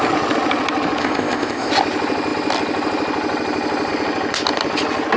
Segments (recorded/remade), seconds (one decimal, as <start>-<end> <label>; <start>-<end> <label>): 0.0-1.0 recorded; 1.0-1.7 remade; 1.7-5.2 recorded